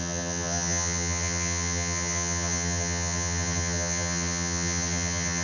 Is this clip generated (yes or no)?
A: yes